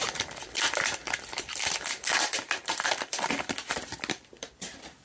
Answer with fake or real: fake